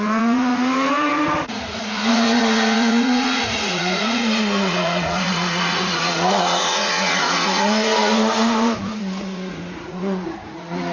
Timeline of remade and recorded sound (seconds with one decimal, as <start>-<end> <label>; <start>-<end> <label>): 0.0-10.9 remade

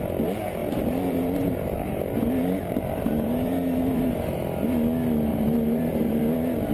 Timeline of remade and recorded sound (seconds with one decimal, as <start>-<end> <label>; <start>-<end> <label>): 0.0-0.6 recorded; 0.6-4.1 remade; 4.1-5.3 recorded; 5.3-6.2 remade; 6.2-6.7 recorded